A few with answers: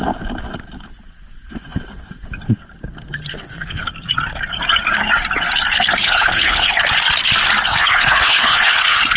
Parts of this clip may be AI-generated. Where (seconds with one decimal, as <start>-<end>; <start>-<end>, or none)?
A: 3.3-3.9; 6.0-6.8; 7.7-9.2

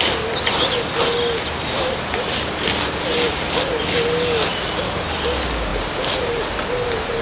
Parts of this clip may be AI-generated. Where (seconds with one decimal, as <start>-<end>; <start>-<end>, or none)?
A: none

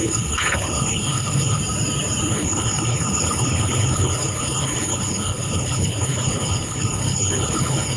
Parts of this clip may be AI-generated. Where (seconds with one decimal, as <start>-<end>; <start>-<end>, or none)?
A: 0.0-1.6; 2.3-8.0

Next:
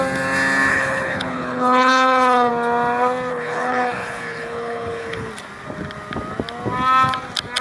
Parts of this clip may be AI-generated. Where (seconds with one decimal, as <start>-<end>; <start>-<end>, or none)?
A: 0.7-2.5; 3.3-5.3

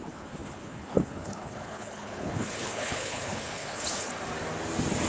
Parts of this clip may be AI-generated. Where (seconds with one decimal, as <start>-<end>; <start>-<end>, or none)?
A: 0.0-4.1

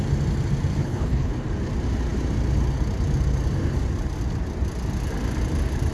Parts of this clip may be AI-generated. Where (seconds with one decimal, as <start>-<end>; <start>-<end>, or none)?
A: 0.8-1.3